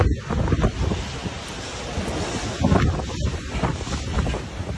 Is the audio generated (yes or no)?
no